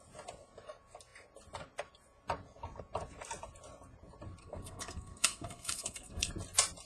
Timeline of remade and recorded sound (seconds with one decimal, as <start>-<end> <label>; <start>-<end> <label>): 0.0-4.4 recorded; 4.4-6.3 remade; 6.3-6.9 recorded